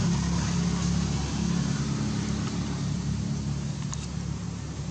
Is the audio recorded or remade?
recorded